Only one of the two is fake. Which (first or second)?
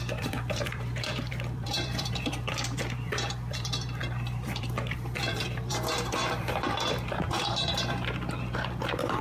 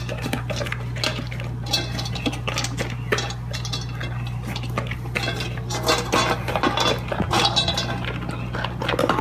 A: first